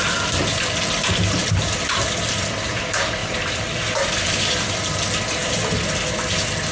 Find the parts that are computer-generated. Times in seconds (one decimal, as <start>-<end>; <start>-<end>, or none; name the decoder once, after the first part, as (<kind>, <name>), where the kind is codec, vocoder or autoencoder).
none